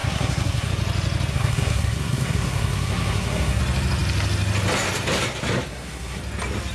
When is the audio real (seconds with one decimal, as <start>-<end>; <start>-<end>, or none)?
0.7-1.3; 3.6-5.7; 6.2-6.7